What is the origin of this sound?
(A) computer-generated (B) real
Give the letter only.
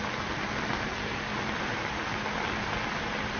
B